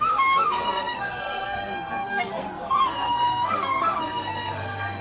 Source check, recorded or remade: remade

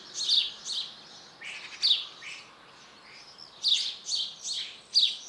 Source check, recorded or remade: recorded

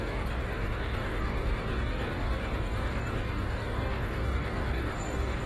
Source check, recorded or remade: remade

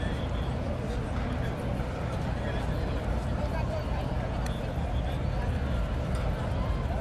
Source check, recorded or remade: recorded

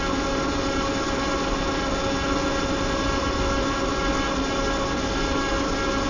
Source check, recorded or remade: recorded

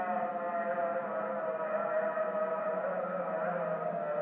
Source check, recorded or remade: recorded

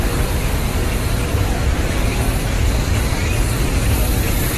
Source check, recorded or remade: recorded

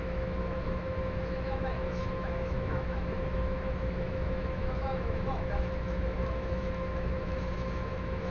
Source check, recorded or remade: remade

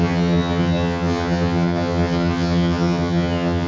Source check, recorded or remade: remade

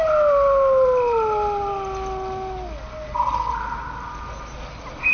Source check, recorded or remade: recorded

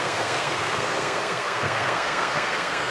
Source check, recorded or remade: remade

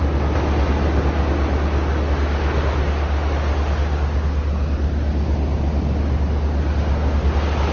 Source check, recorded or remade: recorded